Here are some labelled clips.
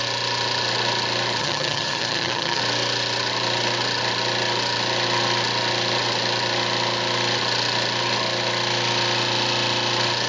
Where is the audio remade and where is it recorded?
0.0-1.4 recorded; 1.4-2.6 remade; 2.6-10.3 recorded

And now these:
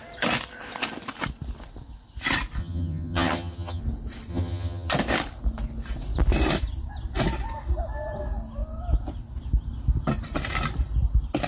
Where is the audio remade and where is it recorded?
0.0-2.6 recorded; 2.6-3.8 remade; 3.8-4.3 recorded; 4.3-4.9 remade; 4.9-11.5 recorded